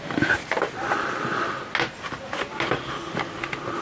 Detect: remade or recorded recorded